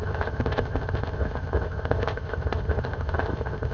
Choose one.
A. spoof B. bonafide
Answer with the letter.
A